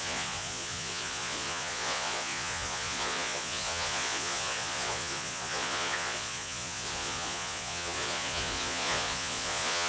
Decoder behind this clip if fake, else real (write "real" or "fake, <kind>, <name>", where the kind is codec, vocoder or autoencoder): fake, vocoder, Vocos